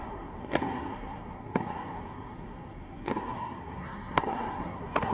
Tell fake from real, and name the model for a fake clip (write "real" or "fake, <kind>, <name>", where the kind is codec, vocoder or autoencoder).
fake, codec, SNAC